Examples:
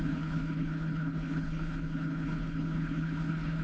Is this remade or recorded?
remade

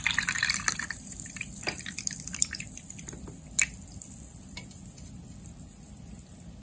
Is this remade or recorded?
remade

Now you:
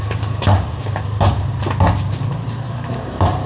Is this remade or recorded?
recorded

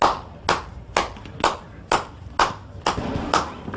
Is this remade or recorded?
recorded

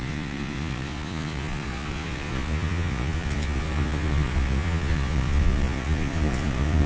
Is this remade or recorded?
remade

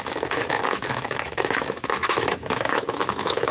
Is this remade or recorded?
remade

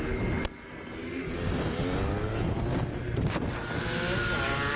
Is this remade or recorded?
recorded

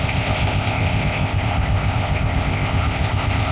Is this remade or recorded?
remade